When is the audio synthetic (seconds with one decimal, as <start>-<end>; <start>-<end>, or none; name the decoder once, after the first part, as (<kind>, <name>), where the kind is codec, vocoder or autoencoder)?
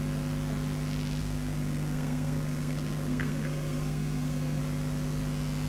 1.2-4.6 (codec, SNAC)